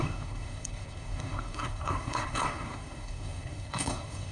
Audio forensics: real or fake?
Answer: fake